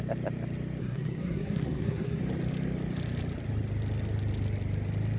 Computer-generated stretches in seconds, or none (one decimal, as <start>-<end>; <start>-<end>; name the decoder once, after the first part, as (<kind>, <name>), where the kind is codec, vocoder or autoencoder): 0.8-2.2 (codec, SNAC)

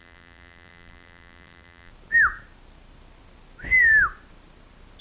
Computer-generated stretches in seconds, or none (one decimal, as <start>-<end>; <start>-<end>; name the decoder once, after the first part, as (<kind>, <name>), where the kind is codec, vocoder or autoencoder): 0.0-1.9 (vocoder, BigVGAN v2)